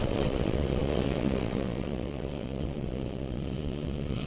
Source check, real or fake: fake